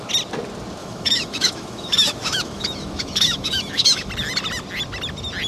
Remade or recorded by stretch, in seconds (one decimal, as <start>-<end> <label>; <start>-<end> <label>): 0.0-0.8 recorded; 0.8-4.1 remade; 4.1-5.5 recorded